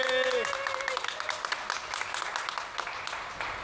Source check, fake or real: real